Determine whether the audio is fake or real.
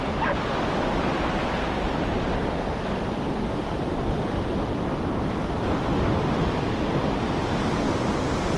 real